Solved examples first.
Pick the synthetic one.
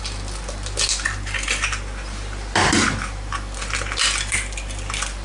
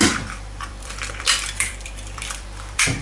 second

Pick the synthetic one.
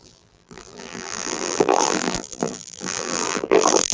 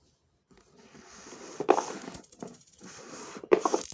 first